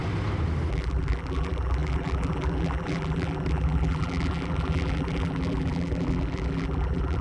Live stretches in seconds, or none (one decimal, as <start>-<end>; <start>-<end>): 0.0-0.7